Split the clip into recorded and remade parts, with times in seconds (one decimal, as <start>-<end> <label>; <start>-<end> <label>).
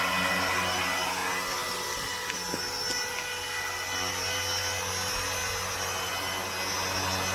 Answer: 0.0-7.3 recorded